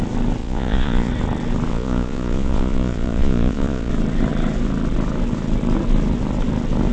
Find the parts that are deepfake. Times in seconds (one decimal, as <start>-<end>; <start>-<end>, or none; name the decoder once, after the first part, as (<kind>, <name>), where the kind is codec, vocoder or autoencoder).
0.4-1.1 (vocoder, Vocos); 1.7-3.9